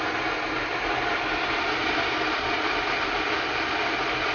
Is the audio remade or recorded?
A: recorded